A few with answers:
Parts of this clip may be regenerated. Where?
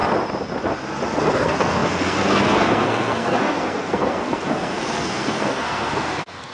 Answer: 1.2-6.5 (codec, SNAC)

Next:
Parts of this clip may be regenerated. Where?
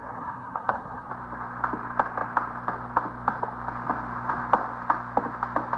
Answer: 0.0-1.1 (codec, SNAC)